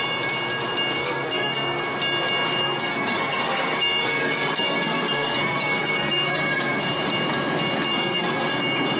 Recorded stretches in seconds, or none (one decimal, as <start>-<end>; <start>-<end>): 0.0-1.0; 1.8-2.6; 6.8-7.9; 8.5-9.0